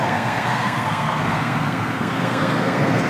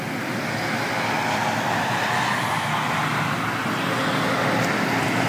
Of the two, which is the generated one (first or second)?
first